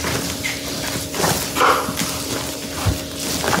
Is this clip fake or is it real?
real